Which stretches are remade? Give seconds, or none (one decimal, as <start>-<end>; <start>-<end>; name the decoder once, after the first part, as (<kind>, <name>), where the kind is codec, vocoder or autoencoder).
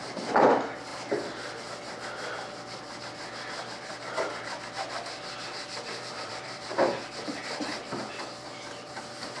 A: 0.0-0.9 (vocoder, BigVGAN v2); 6.1-7.4; 7.9-9.4